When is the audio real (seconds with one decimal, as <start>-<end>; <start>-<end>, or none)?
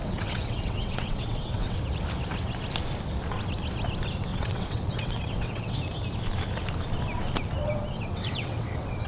1.8-4.3; 5.8-7.9